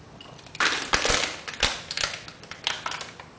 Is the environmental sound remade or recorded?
remade